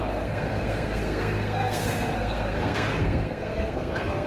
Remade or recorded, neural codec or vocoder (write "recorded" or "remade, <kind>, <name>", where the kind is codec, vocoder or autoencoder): remade, codec, SNAC